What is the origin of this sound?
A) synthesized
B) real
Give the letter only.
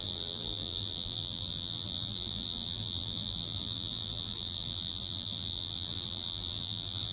A